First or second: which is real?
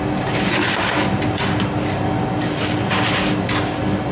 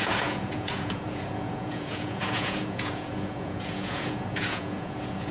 first